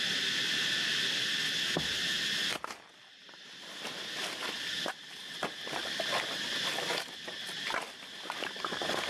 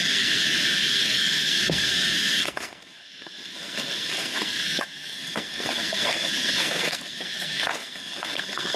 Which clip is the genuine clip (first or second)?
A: first